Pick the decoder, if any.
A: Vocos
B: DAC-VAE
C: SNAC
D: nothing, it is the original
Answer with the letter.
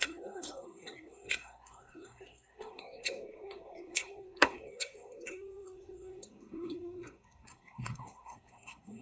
C